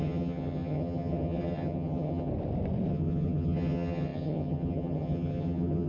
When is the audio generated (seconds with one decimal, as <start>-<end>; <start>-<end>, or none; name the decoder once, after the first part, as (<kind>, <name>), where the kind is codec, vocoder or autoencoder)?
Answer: 0.0-2.3 (vocoder, HiFi-GAN); 2.9-5.9